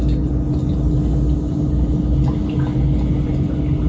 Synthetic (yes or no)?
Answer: no